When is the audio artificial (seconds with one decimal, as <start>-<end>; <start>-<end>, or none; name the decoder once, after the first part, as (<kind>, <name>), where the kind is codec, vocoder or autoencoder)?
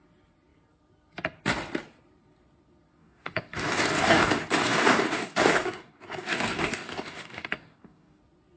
3.0-8.2 (codec, DAC)